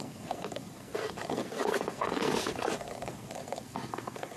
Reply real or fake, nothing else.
fake